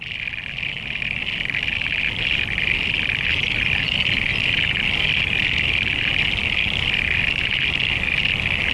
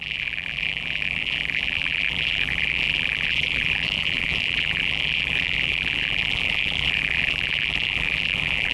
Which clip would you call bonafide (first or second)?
first